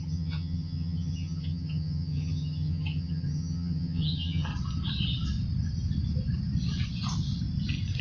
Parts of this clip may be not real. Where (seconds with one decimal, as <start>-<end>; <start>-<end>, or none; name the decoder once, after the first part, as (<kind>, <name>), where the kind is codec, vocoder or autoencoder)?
0.0-4.5 (vocoder, HiFi-GAN)